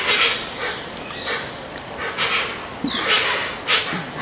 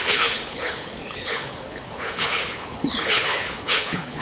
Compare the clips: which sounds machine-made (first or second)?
second